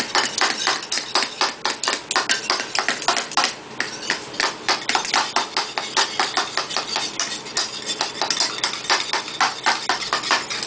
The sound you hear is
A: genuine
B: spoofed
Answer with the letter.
A